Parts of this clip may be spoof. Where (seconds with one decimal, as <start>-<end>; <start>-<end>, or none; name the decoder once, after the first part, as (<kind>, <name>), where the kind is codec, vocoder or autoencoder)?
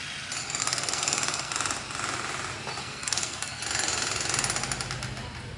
0.6-1.5 (codec, SNAC); 2.8-3.6